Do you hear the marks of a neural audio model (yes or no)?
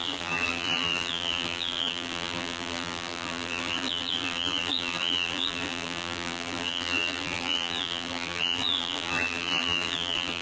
yes